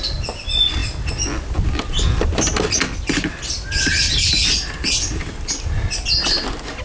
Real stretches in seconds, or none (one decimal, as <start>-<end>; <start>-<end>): 0.0-6.8